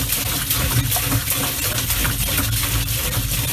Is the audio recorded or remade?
recorded